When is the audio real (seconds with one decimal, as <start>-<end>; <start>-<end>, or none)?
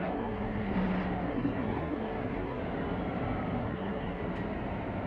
0.7-1.3; 2.6-3.6; 4.2-5.1